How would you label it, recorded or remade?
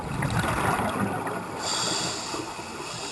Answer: recorded